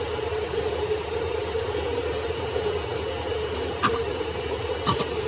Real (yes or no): yes